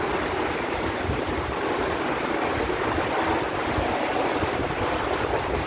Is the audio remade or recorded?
recorded